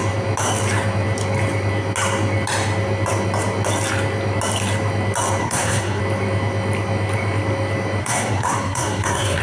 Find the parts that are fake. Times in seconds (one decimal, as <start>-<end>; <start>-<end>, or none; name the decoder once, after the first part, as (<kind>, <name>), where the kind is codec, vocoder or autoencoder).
5.4-6.0 (codec, SNAC); 8.0-9.4